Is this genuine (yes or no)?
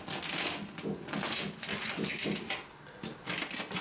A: yes